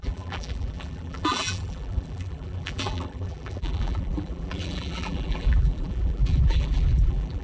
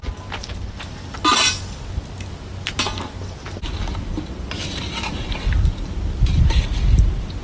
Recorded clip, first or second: second